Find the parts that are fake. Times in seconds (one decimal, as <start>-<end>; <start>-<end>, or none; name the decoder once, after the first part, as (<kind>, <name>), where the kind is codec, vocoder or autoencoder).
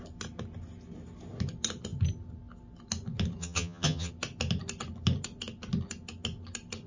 3.4-4.1 (vocoder, HiFi-GAN)